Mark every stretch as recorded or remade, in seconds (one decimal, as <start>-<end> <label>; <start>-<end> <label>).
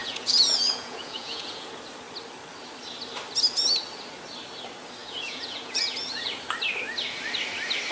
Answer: 0.0-1.7 remade; 1.7-5.0 recorded; 5.0-6.3 remade; 6.3-7.9 recorded